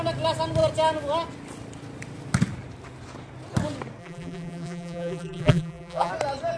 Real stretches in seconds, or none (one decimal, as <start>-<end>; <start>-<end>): 0.0-4.0; 6.1-6.6